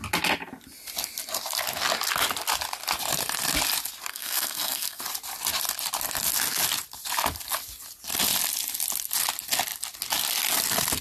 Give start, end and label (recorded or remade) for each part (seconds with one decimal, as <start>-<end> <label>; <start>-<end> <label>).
0.0-4.1 recorded; 4.1-5.0 remade; 5.0-11.0 recorded